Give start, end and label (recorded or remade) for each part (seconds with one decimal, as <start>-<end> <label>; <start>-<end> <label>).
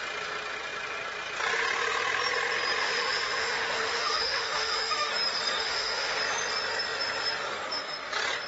0.0-2.8 recorded; 2.8-5.1 remade; 5.1-5.6 recorded; 5.6-6.2 remade; 6.2-8.5 recorded